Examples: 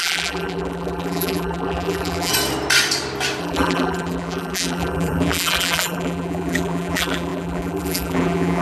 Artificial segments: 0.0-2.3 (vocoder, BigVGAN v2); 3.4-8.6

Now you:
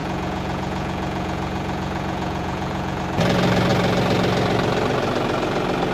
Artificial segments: 0.0-3.0 (vocoder, Vocos)

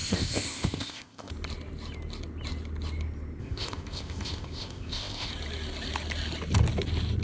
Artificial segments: 0.0-1.3 (codec, ZipCodec); 3.4-5.3

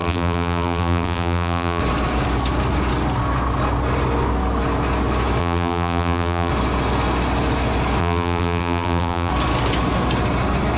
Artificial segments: 0.0-1.8 (vocoder, BigVGAN v2); 5.4-6.5; 8.0-9.3

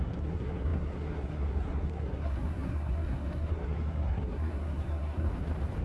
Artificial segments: 0.0-5.3 (codec, SNAC)

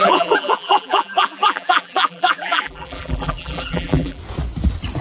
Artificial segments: 0.0-4.2 (vocoder, BigVGAN v2)

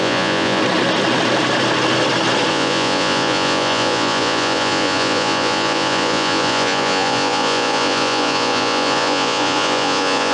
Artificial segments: 0.0-0.6 (vocoder, Vocos); 2.5-10.3

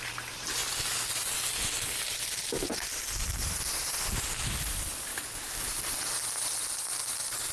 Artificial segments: none